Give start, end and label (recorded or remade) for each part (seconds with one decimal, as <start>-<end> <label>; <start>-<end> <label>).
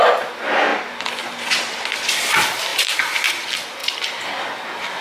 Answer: 0.0-5.0 recorded